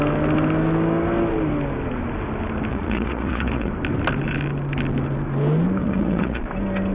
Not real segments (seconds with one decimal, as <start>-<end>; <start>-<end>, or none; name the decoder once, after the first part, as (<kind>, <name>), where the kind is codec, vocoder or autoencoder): 2.7-3.7 (vocoder, Vocos); 5.8-6.4